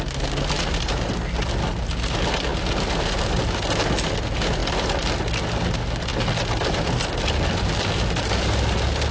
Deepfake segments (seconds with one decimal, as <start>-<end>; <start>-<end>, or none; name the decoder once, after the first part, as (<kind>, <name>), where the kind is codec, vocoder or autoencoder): none